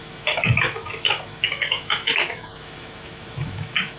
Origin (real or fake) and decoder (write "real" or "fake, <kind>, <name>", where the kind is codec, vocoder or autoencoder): fake, autoencoder, DAC-VAE